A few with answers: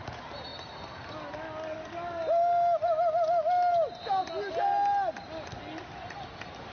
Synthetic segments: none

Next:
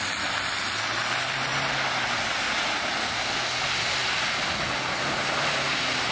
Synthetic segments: none

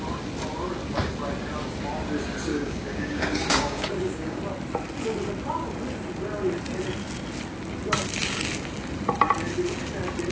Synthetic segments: 2.5-4.4 (codec, DAC)

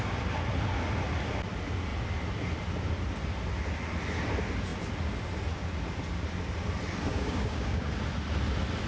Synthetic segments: 7.1-7.9 (codec, DAC)